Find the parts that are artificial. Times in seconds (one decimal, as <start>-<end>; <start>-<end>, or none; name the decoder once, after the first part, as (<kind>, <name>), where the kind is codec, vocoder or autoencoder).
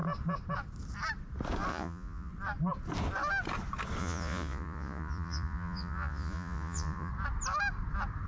1.7-2.3 (vocoder, Vocos); 4.0-7.1